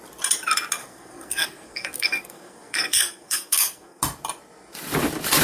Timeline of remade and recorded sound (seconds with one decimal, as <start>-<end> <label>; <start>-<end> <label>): 0.0-0.8 recorded; 0.8-4.0 remade; 4.0-5.4 recorded